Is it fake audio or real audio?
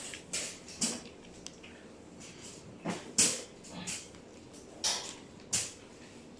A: real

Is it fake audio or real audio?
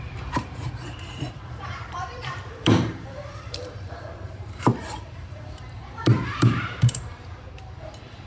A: fake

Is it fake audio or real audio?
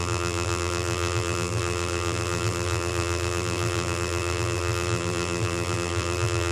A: fake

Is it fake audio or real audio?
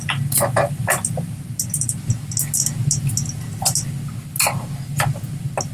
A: real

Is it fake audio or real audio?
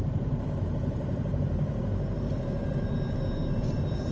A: fake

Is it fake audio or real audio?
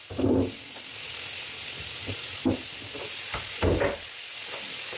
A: real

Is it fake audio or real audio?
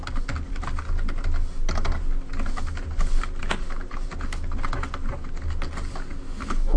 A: real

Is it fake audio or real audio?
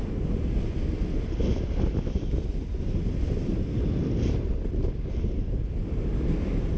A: real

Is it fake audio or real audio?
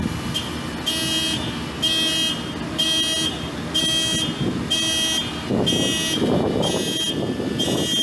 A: real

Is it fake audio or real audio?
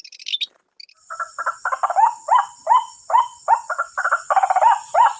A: real